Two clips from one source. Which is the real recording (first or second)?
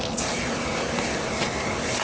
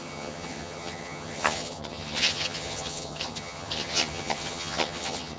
first